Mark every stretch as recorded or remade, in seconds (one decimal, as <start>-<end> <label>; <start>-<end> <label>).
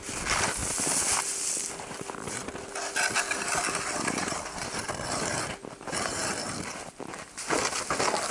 0.0-8.3 recorded